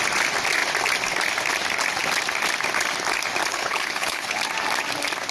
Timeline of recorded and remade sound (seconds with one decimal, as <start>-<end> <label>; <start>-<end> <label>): 0.0-3.5 recorded; 3.5-4.4 remade; 4.4-5.3 recorded